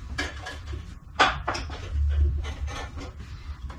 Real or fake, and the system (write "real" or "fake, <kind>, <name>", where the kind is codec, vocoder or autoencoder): real